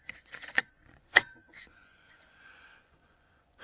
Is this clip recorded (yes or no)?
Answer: no